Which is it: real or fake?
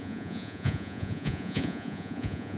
fake